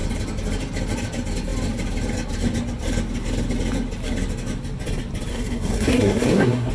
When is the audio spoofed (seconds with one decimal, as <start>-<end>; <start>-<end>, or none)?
5.3-6.7